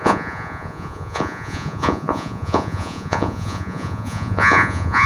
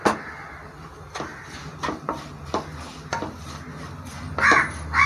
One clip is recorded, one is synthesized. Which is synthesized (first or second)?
first